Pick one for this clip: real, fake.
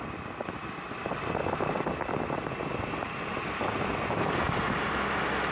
real